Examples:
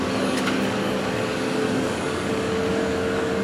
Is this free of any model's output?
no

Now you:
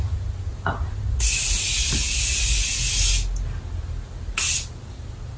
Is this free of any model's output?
yes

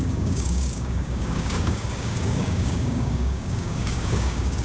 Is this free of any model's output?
no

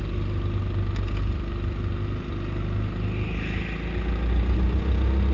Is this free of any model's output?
yes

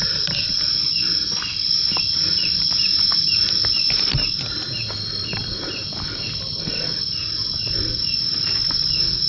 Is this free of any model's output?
yes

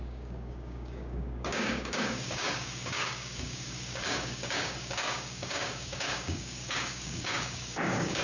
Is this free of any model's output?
no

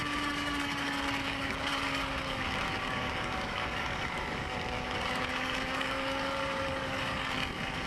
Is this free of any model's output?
no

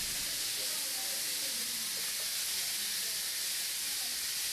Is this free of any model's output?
yes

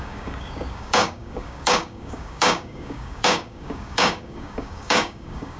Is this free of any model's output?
no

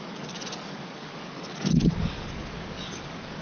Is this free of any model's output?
no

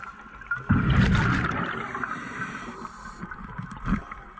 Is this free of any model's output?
yes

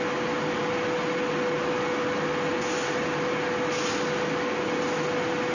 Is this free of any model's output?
yes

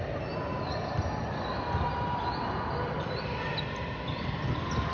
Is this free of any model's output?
yes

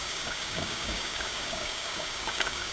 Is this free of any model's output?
no